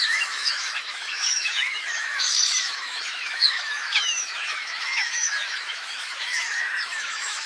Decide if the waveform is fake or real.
fake